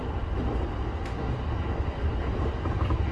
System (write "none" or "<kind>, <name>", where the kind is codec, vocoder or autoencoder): none